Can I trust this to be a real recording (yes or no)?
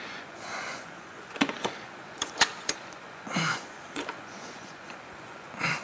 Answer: no